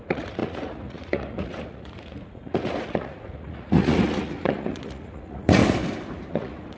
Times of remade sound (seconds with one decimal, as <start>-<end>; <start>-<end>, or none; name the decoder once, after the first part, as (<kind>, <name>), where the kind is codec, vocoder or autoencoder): 0.0-5.6 (vocoder, Vocos); 6.3-6.8